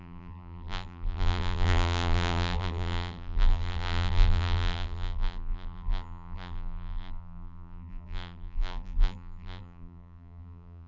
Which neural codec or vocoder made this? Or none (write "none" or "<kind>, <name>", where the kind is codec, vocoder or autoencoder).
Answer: vocoder, BigVGAN v2